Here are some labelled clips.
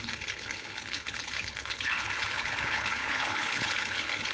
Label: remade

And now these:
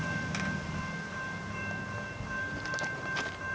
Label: remade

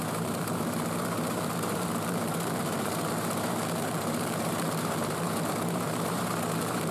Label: remade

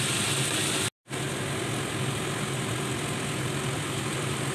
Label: recorded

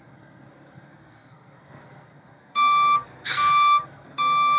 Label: remade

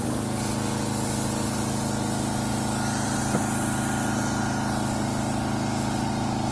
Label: recorded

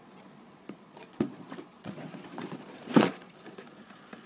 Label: remade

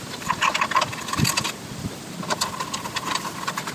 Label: recorded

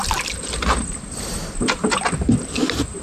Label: remade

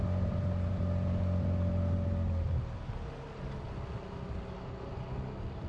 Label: recorded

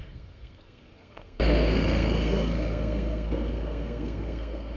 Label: remade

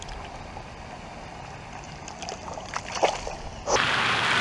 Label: recorded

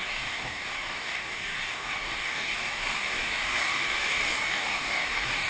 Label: remade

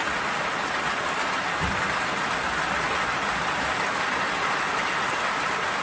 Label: recorded